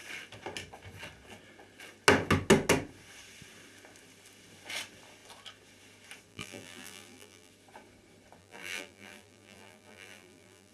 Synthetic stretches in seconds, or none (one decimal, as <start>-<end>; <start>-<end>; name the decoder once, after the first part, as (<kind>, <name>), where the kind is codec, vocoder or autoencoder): 6.3-7.5 (vocoder, BigVGAN v2); 8.4-10.7